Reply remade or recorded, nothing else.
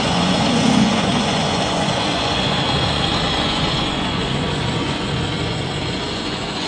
remade